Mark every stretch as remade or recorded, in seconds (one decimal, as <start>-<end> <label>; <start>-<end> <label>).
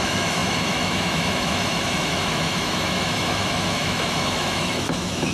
0.0-5.3 remade